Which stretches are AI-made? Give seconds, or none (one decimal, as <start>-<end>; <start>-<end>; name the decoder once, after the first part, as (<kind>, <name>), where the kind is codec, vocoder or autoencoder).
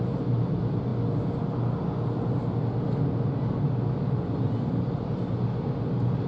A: none